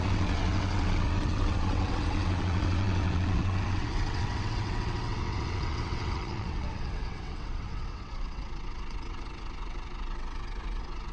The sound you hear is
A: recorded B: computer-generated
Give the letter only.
B